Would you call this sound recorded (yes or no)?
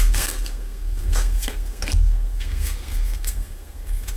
no